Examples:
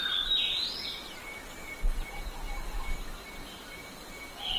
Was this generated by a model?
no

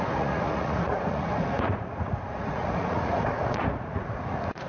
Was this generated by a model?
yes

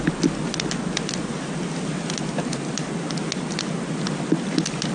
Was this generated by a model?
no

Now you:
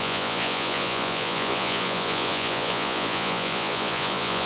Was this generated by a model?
yes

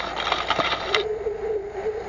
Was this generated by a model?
no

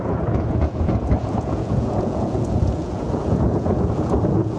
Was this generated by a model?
yes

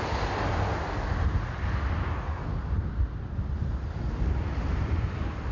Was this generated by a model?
no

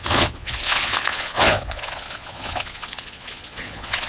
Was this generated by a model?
yes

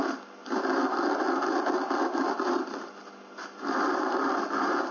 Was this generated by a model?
no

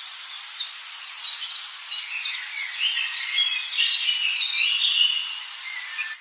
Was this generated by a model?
no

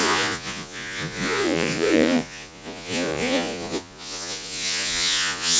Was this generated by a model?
yes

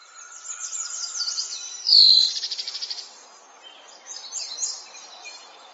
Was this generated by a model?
no